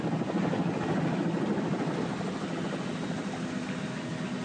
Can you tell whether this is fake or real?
real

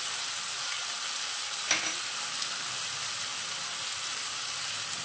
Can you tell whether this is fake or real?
real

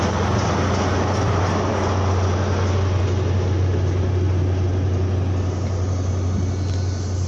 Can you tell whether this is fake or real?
real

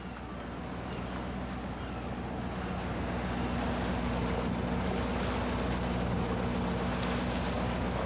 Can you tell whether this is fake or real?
real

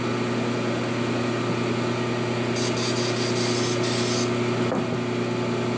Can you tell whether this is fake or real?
real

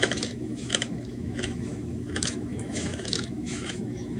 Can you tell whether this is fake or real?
fake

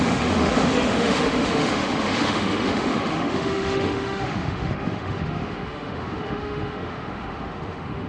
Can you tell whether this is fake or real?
fake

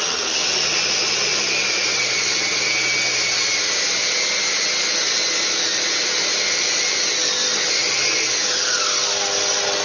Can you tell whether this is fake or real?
real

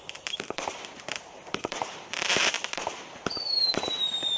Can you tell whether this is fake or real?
fake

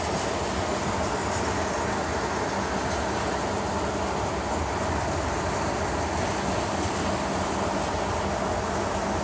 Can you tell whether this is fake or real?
real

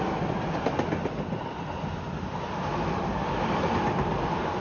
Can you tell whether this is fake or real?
real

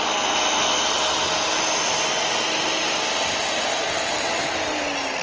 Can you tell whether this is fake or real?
real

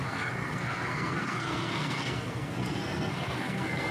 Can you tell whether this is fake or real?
fake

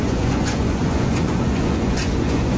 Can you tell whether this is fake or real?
fake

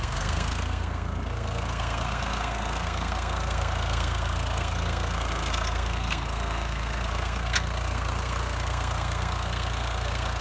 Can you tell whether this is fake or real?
fake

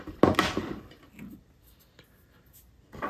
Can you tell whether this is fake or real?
real